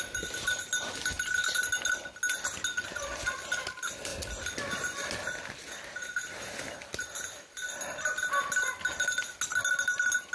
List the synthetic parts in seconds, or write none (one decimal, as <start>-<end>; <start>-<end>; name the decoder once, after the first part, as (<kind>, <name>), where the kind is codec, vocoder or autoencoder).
none